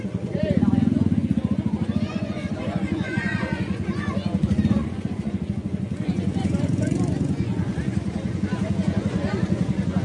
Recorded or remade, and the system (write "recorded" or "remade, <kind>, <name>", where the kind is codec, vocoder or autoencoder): remade, vocoder, Vocos